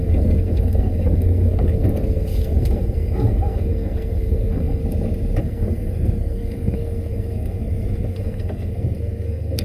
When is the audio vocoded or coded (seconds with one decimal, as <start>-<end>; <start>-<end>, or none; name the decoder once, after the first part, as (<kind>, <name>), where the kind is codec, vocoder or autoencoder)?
0.0-4.8 (codec, SNAC); 5.4-9.6